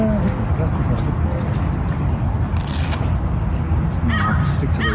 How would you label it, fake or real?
real